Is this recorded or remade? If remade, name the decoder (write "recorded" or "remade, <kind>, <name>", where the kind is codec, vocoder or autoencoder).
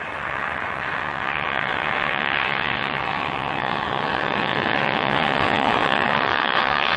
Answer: remade, vocoder, WaveNeXt